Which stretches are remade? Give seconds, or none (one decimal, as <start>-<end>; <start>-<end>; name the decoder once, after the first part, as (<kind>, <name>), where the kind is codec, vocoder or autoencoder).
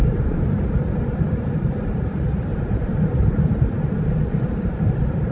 0.0-0.6 (vocoder, BigVGAN v2); 2.5-3.0